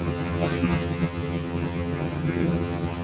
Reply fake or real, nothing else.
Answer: fake